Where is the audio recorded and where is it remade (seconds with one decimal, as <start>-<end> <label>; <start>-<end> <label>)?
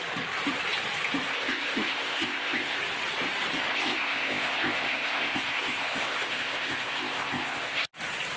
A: 0.0-1.3 recorded; 1.3-2.8 remade; 2.8-3.7 recorded; 3.7-7.9 remade; 7.9-8.4 recorded